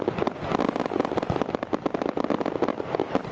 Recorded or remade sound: recorded